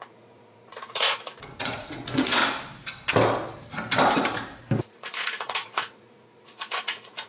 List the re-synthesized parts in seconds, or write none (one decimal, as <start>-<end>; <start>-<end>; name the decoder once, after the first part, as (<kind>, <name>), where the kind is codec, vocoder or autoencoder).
0.0-2.4 (vocoder, Vocos); 4.8-7.3